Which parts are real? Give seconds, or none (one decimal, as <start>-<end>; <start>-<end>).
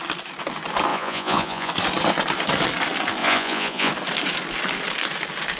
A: 0.0-0.9; 1.7-3.2; 3.9-5.6